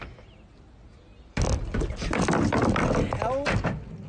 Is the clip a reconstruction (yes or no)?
no